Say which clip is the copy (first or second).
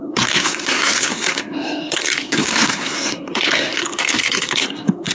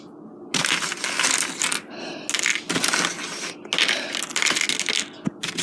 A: first